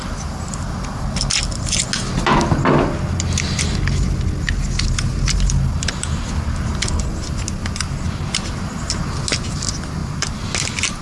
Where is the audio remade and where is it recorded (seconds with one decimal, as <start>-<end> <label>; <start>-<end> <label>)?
0.0-11.0 recorded